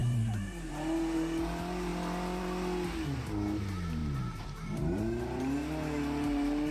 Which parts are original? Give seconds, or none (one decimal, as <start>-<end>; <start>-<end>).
0.7-6.7